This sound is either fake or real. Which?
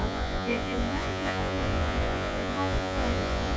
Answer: fake